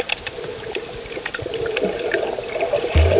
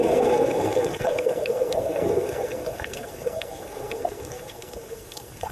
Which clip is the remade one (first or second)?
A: second